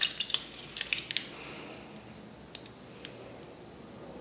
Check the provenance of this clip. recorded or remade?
recorded